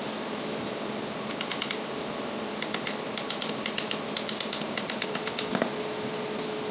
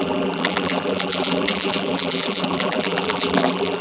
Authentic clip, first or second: first